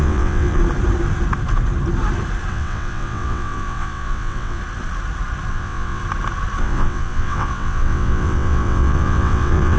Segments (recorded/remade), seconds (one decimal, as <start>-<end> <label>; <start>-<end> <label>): 0.0-0.6 remade; 0.6-2.5 recorded; 2.5-4.6 remade; 4.6-5.5 recorded; 5.5-6.0 remade; 6.0-6.6 recorded; 6.6-9.8 remade

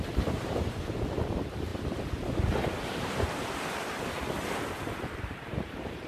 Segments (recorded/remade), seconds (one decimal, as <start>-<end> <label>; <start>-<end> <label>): 0.0-2.9 recorded; 2.9-3.9 remade; 3.9-6.1 recorded

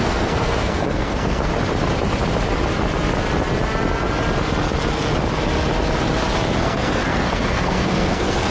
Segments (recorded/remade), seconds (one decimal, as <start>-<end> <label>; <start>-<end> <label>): 0.0-1.5 remade; 1.5-6.6 recorded; 6.6-8.5 remade